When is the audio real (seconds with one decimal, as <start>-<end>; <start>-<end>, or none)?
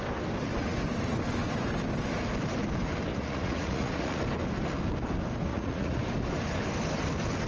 0.0-3.1; 4.2-5.5; 6.0-7.5